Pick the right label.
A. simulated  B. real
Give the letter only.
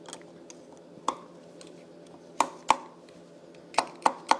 B